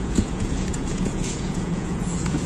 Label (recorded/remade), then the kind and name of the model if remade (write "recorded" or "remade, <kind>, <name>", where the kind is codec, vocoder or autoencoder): remade, vocoder, Vocos